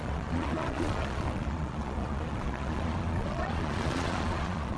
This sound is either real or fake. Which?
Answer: fake